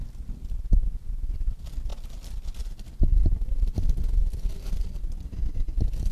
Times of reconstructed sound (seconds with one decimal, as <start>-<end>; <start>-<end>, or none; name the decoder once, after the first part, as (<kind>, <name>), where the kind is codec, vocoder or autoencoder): none